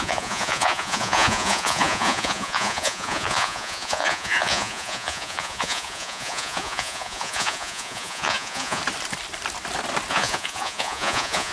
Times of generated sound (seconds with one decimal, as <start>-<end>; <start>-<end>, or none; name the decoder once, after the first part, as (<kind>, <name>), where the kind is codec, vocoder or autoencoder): 0.0-8.8 (vocoder, Vocos); 10.1-11.5